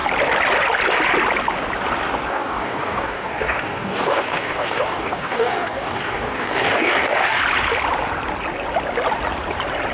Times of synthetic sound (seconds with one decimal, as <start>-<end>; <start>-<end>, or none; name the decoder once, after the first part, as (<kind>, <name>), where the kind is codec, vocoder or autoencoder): 2.3-7.4 (codec, DAC)